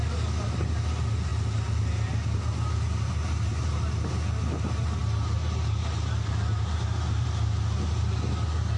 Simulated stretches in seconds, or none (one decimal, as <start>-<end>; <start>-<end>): none